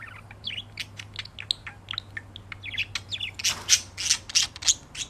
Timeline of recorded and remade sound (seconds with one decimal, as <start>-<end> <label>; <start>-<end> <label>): 0.0-5.1 recorded